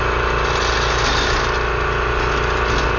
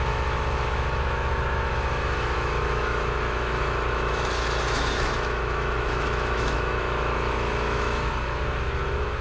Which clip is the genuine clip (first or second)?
first